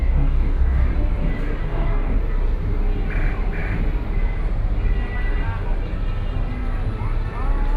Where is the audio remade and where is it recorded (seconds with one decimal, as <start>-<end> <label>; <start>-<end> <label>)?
0.0-0.9 remade; 0.9-1.6 recorded; 1.6-2.2 remade; 2.2-7.8 recorded